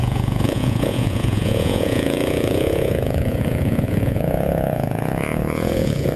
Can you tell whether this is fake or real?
fake